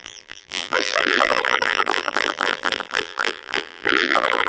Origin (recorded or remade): remade